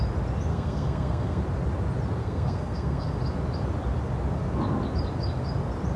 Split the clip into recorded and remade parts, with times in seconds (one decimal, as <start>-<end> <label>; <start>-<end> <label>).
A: 0.0-0.5 recorded; 0.5-1.4 remade; 1.4-2.2 recorded; 2.2-3.2 remade; 3.2-6.0 recorded